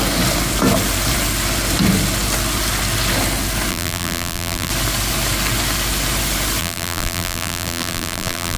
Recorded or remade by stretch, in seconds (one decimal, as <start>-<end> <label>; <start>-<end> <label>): 0.0-3.7 recorded; 3.7-4.7 remade; 4.7-6.6 recorded; 6.6-8.6 remade